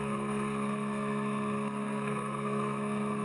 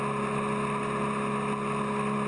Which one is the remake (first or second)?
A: first